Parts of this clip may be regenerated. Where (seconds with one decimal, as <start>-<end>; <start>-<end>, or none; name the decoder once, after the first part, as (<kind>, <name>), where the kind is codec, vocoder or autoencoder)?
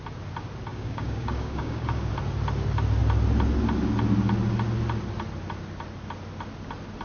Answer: 0.7-2.1 (codec, DAC)